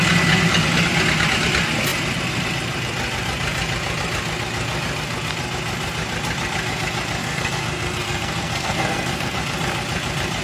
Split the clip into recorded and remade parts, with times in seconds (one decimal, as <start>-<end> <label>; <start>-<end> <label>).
0.0-7.2 recorded; 7.2-9.4 remade; 9.4-10.4 recorded